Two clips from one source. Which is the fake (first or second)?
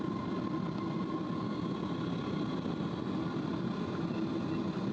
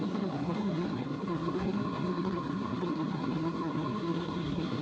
second